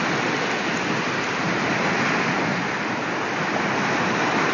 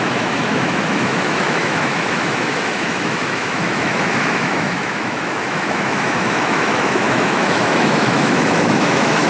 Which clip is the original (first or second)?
first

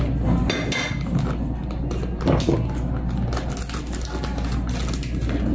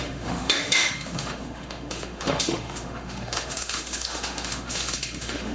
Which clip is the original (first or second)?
first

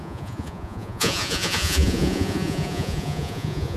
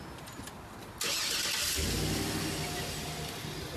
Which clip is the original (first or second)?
second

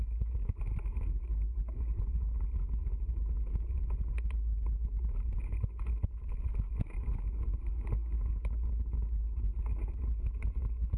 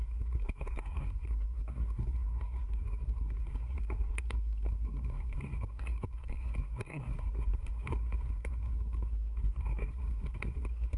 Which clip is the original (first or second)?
first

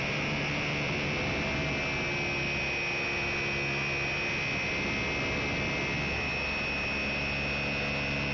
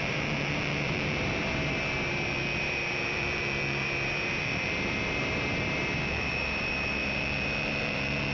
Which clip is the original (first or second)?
first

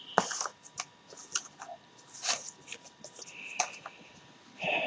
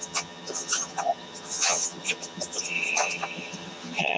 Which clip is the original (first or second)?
first